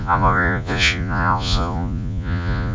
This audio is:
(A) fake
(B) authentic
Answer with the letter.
A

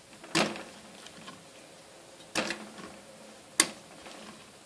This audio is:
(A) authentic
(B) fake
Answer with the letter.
A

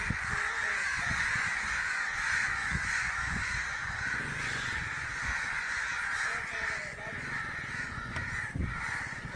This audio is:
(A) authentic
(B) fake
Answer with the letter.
B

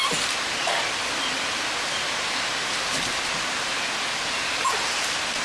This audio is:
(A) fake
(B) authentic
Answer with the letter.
B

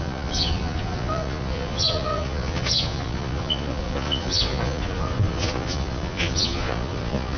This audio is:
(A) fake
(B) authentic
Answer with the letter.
A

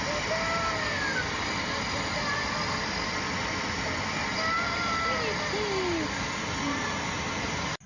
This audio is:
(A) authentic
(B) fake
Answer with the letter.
A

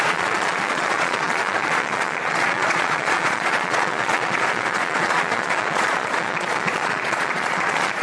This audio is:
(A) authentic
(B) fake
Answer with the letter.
B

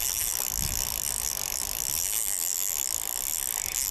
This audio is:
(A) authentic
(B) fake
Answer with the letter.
A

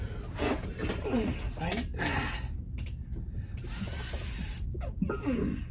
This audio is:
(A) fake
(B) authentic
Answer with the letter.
B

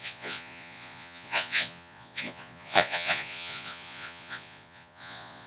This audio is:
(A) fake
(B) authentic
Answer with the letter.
A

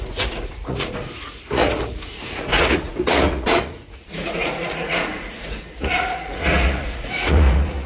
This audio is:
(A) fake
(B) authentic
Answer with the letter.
A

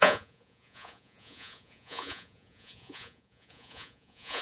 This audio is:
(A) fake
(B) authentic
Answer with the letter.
A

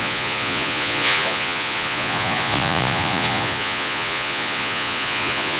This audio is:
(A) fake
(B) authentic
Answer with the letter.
A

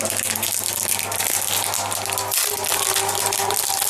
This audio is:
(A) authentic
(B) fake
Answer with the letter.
A